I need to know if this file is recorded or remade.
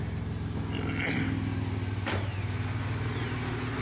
recorded